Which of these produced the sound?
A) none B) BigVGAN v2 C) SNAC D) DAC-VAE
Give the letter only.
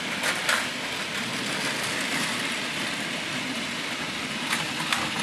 A